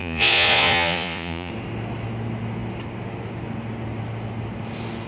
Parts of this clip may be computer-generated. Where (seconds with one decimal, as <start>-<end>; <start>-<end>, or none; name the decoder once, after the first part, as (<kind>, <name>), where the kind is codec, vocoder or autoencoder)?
0.0-1.5 (vocoder, Vocos)